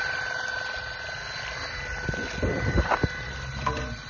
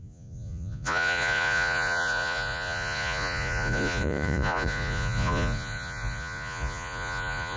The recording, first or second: first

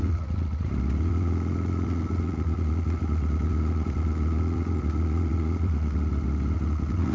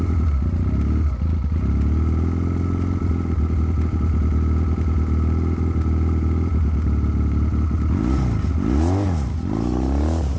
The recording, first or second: second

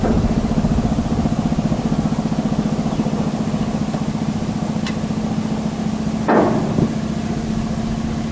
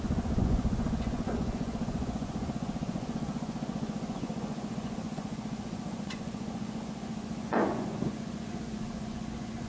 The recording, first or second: first